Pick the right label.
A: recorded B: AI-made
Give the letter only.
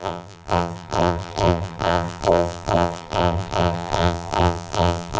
B